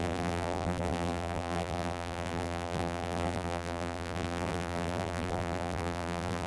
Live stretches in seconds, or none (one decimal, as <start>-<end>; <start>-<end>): none